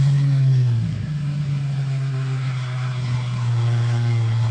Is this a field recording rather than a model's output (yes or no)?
no